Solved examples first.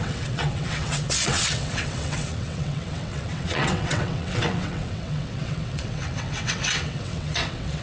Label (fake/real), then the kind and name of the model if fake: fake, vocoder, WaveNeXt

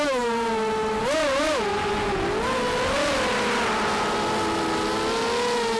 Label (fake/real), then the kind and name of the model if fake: real